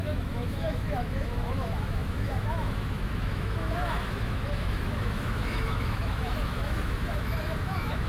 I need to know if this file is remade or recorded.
remade